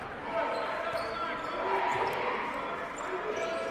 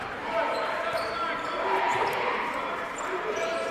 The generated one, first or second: second